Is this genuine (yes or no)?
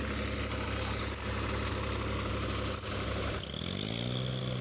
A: yes